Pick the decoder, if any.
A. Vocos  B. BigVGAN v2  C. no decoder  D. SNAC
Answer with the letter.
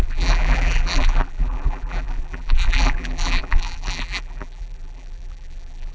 B